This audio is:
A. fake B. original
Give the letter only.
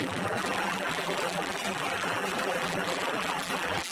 A